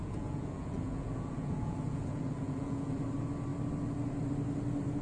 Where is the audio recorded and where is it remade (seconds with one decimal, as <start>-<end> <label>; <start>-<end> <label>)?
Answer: 0.0-3.0 remade; 3.0-5.0 recorded